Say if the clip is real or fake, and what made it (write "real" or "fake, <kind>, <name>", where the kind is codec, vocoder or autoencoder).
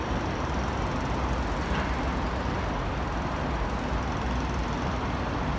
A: real